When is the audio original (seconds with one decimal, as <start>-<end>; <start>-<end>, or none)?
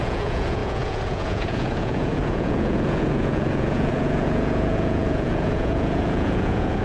none